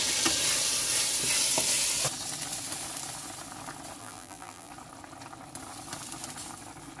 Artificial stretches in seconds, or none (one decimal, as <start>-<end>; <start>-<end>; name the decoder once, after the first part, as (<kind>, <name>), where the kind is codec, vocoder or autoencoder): 4.0-4.7 (vocoder, BigVGAN v2)